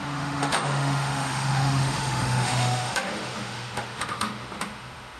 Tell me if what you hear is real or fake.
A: fake